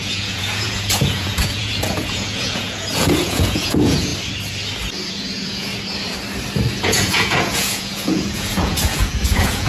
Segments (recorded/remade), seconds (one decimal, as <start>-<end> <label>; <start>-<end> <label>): 0.0-4.1 remade; 4.1-5.1 recorded; 5.1-5.7 remade; 5.7-6.8 recorded; 6.8-9.7 remade